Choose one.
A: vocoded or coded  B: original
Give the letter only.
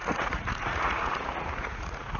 A